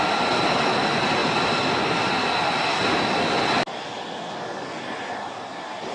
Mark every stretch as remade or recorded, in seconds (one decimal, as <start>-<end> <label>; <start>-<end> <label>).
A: 0.0-5.9 recorded